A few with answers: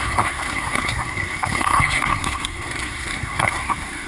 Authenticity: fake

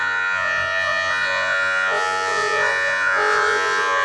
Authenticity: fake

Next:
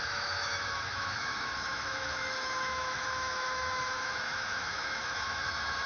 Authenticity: fake